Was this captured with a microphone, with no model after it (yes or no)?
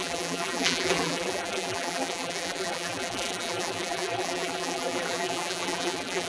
no